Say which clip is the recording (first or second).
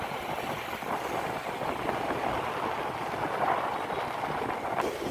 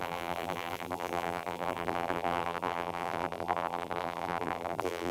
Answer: first